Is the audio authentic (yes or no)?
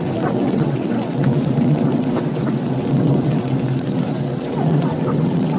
no